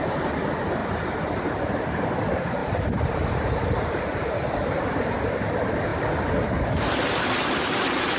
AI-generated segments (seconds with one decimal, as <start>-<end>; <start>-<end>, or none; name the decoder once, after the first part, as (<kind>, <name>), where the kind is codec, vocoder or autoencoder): 0.8-1.4 (vocoder, BigVGAN v2); 2.6-5.2